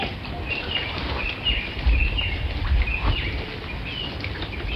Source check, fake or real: real